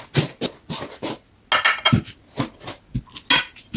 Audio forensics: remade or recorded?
recorded